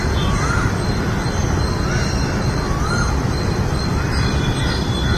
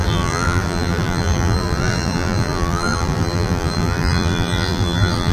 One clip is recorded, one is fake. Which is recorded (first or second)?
first